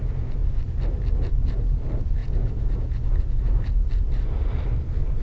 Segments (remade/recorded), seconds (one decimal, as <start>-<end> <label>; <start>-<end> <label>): 0.0-2.2 recorded; 2.2-3.6 remade; 3.6-5.2 recorded